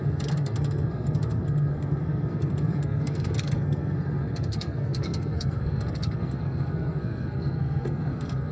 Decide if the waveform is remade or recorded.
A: remade